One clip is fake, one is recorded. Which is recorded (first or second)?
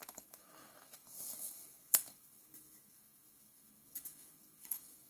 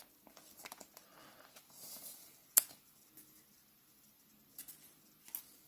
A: second